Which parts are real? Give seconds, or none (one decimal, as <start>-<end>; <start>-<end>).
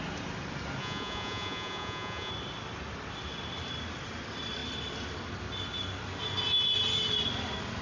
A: 0.0-0.8; 2.3-7.8